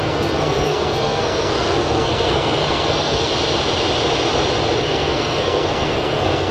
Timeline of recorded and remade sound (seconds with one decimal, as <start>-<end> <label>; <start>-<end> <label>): 0.0-3.3 remade; 3.3-4.8 recorded; 4.8-6.5 remade